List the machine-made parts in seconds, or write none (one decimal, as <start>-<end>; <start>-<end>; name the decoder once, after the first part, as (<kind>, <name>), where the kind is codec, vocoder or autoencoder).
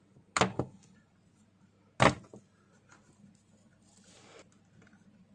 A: none